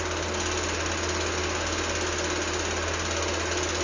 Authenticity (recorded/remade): recorded